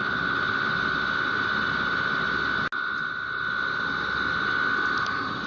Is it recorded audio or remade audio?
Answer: recorded